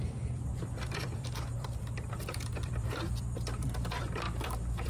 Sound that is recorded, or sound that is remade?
remade